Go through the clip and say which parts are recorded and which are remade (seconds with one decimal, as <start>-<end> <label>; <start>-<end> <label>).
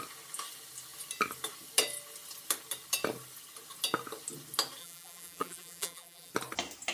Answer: 0.0-4.8 recorded; 4.8-6.3 remade; 6.3-6.9 recorded